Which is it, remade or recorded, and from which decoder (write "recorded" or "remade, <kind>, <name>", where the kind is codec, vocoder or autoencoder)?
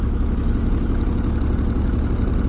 recorded